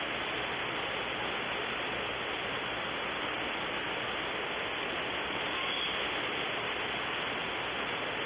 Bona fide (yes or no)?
yes